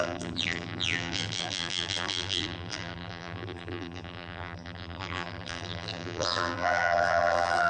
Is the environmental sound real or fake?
fake